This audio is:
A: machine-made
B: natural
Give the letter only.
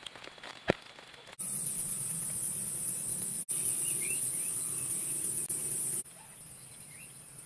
B